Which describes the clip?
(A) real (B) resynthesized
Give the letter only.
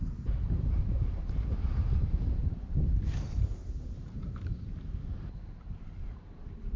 B